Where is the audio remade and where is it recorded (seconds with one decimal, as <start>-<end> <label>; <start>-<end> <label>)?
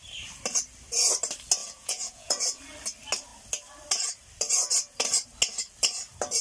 0.0-1.6 recorded; 1.6-2.6 remade; 2.6-6.4 recorded